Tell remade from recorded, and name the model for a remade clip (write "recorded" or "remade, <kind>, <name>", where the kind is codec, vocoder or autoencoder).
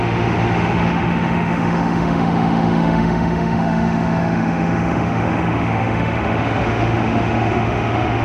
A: remade, autoencoder, DAC-VAE